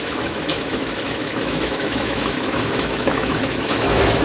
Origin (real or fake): fake